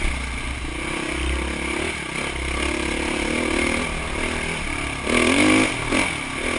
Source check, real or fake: real